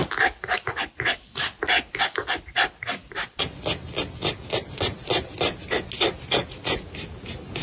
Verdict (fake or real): real